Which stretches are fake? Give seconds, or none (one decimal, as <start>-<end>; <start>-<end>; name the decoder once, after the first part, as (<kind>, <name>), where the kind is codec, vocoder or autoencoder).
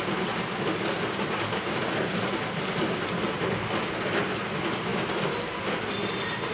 none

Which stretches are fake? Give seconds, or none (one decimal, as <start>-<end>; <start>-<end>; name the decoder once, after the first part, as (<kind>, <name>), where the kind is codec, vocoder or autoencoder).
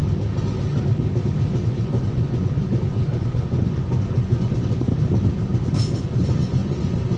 1.5-4.9 (vocoder, Vocos); 6.0-7.2